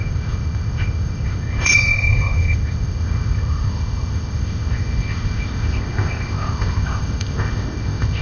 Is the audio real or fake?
fake